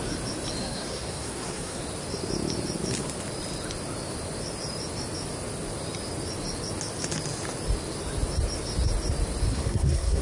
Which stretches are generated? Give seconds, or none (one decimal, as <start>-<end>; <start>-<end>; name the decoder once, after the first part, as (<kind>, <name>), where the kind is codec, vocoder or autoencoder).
0.6-1.8 (codec, SNAC); 9.5-10.2